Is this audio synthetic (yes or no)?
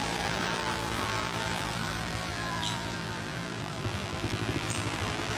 yes